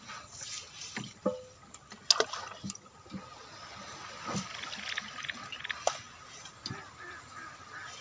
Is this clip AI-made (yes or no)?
no